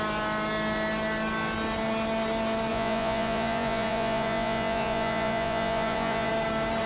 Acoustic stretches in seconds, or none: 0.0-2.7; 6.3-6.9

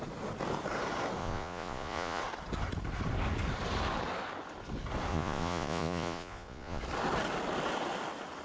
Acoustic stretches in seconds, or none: 0.0-1.2; 2.2-5.1; 6.8-8.4

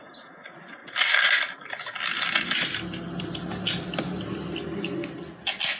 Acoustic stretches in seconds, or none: 0.0-5.8

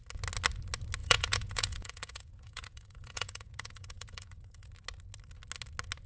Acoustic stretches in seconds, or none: 0.0-1.0; 4.7-6.1

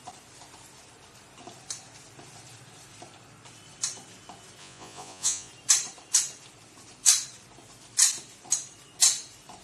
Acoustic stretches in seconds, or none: 0.0-4.6; 5.5-9.6

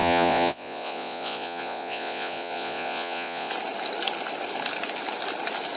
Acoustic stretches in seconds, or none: 3.5-5.8

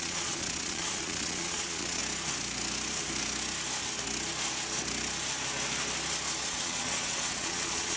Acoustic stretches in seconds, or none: 2.0-6.4

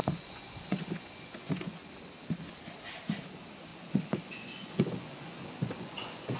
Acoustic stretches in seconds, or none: 1.9-3.7